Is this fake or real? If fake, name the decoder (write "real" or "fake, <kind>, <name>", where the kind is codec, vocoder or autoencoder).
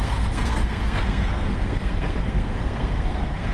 fake, codec, SNAC